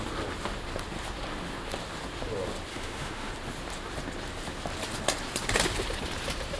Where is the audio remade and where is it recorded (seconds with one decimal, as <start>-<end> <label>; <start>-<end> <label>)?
0.0-2.7 recorded; 2.7-3.3 remade; 3.3-6.6 recorded